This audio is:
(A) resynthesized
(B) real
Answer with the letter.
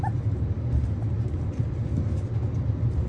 B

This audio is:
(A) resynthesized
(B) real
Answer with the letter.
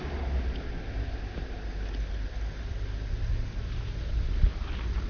B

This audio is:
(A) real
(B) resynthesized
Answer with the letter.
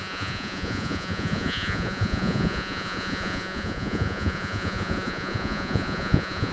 B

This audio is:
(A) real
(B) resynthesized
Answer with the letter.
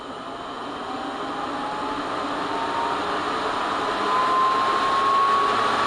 A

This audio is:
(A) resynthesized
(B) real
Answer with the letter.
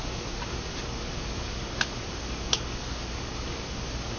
A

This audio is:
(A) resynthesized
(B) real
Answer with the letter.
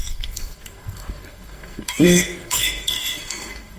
A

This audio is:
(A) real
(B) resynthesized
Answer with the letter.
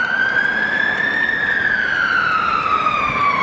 A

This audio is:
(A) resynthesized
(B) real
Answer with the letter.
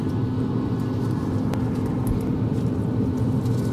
B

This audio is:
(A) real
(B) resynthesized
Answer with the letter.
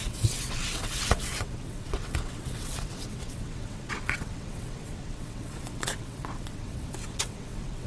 B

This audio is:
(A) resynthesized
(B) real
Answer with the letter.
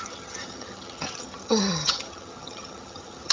A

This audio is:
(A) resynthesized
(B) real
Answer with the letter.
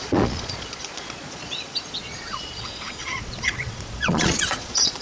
A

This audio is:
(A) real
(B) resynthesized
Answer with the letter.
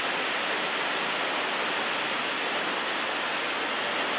A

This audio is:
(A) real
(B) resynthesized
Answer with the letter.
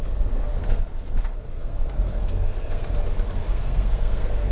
B